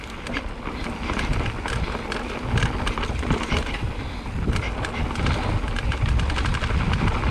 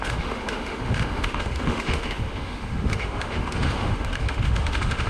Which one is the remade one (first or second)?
second